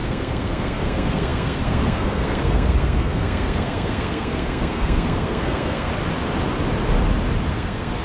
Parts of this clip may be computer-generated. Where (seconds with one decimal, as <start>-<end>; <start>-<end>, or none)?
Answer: 0.0-5.9; 7.5-8.0